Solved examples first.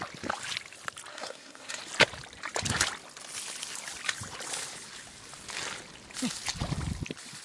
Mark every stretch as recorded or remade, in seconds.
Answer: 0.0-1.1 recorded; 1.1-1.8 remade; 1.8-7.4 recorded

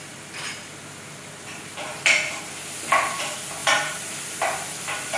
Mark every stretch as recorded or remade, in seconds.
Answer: 0.0-1.5 recorded; 1.5-2.4 remade; 2.4-3.6 recorded; 3.6-5.2 remade

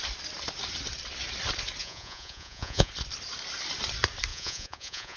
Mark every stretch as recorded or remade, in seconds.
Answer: 0.0-1.8 recorded; 1.8-2.9 remade; 2.9-4.3 recorded; 4.3-5.2 remade

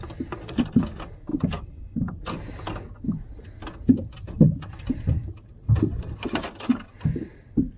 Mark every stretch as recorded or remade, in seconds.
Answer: 0.0-7.8 recorded

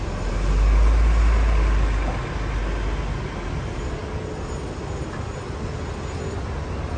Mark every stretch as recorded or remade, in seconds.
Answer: 0.0-7.0 recorded

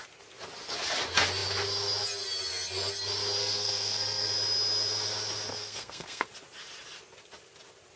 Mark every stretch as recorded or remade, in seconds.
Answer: 0.0-3.4 recorded; 3.4-4.3 remade; 4.3-5.5 recorded; 5.5-6.3 remade; 6.3-8.0 recorded

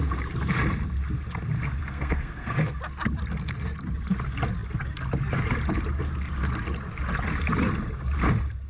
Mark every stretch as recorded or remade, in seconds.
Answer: 0.0-1.8 recorded; 1.8-2.8 remade; 2.8-8.7 recorded

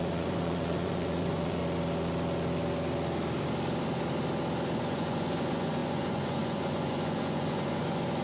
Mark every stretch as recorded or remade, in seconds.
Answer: 0.0-1.6 remade; 1.6-4.8 recorded; 4.8-8.2 remade